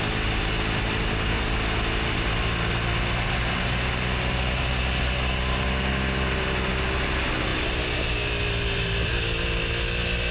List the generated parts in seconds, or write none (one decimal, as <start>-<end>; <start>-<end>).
none